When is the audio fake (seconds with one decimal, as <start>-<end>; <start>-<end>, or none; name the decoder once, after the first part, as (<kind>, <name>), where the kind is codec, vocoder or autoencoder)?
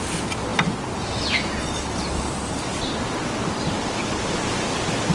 none